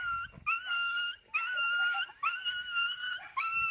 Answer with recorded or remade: recorded